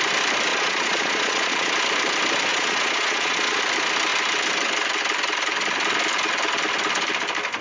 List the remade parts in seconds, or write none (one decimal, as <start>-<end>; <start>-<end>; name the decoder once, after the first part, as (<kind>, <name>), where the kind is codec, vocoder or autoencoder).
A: 0.5-1.7 (vocoder, Vocos); 2.5-3.6